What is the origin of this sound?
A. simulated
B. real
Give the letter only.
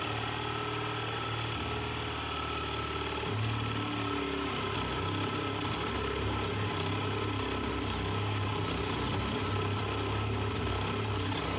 B